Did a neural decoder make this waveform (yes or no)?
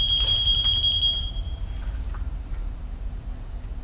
yes